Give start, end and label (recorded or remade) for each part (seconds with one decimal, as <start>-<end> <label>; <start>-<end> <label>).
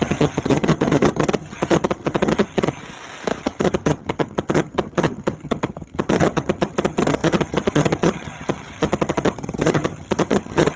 0.0-2.8 remade; 2.8-3.4 recorded; 3.4-10.8 remade